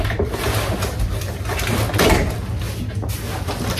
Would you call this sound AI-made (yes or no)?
no